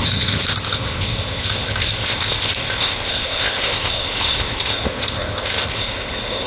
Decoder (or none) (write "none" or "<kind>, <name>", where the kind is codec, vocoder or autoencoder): codec, ZipCodec